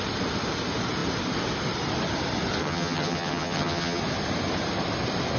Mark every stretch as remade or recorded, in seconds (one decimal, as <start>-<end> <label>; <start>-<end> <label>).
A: 0.0-2.6 recorded; 2.6-4.0 remade; 4.0-5.4 recorded